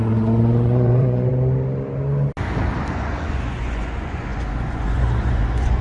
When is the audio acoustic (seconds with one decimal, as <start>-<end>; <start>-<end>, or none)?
1.3-2.9